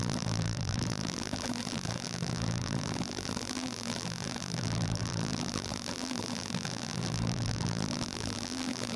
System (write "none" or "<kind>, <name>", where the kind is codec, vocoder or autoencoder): vocoder, BigVGAN v2